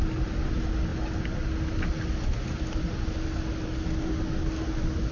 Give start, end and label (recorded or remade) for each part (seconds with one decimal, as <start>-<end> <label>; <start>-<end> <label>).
0.0-5.1 recorded